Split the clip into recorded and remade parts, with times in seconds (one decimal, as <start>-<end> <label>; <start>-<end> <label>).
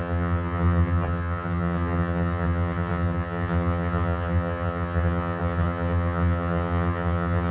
0.0-7.5 remade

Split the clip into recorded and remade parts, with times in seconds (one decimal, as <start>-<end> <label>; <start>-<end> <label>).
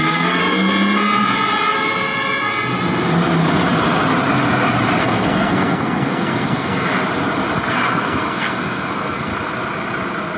0.0-0.4 remade; 0.4-5.0 recorded; 5.0-6.9 remade; 6.9-7.7 recorded; 7.7-9.3 remade; 9.3-10.4 recorded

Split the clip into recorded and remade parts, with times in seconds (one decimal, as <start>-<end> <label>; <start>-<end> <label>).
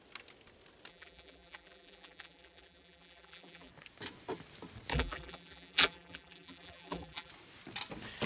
0.0-0.9 recorded; 0.9-3.7 remade; 3.7-4.9 recorded; 4.9-7.3 remade; 7.3-8.3 recorded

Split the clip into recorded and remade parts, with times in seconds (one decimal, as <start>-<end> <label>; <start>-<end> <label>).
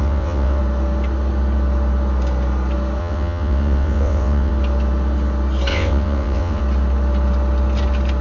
0.0-0.6 remade; 0.6-3.0 recorded; 3.0-4.5 remade; 4.5-5.7 recorded; 5.7-6.6 remade; 6.6-8.2 recorded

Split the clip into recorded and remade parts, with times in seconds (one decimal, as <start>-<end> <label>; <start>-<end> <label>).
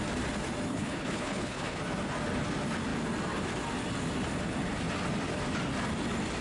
0.0-0.7 recorded; 0.7-1.8 remade; 1.8-6.4 recorded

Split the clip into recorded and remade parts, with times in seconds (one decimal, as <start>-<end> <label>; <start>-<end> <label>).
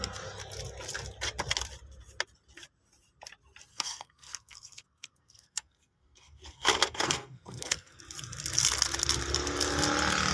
0.0-3.7 recorded; 3.7-8.0 remade; 8.0-10.3 recorded